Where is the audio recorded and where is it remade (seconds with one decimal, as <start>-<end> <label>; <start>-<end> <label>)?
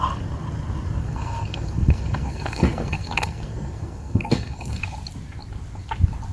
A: 0.0-1.0 recorded; 1.0-4.8 remade; 4.8-6.3 recorded